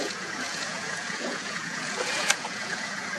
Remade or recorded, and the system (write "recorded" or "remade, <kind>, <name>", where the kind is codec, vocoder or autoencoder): remade, vocoder, Vocos